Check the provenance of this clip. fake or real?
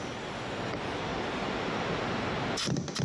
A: real